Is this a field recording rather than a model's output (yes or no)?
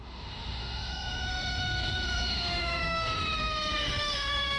no